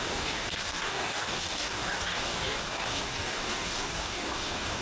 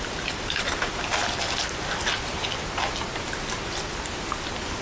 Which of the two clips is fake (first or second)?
first